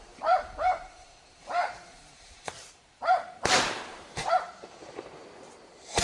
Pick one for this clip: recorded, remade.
remade